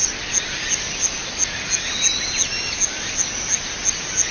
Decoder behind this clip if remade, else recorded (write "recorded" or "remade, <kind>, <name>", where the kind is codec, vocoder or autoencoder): recorded